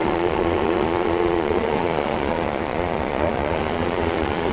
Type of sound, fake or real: fake